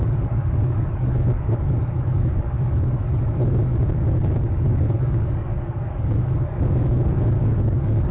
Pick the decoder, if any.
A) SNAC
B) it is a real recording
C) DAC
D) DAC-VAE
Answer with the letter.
C